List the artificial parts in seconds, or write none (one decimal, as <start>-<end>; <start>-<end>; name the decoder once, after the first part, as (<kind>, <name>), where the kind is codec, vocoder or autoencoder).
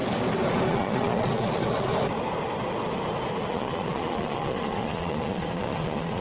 0.7-1.9 (vocoder, Vocos); 3.5-6.2